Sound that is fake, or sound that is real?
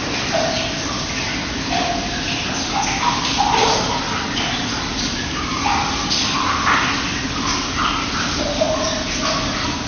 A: real